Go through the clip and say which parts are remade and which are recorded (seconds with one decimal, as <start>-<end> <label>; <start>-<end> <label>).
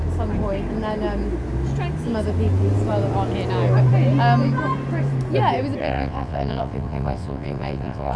0.0-5.8 recorded; 5.8-8.2 remade